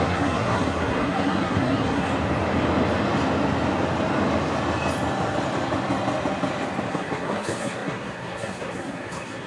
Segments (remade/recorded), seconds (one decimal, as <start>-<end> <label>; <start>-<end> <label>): 0.0-2.1 remade; 2.1-6.9 recorded; 6.9-9.5 remade